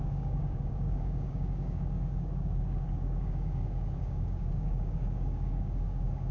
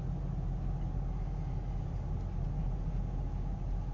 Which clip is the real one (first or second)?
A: second